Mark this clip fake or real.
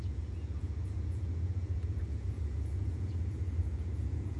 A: fake